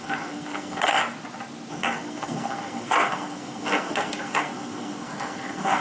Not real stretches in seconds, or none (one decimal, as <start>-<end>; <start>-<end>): 0.0-1.0; 1.7-5.8